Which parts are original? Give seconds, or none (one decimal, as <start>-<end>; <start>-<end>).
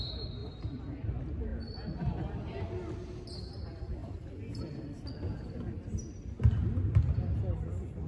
0.0-0.4; 1.1-1.5; 2.0-4.0; 4.6-8.1